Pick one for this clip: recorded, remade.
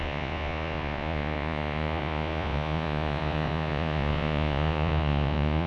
remade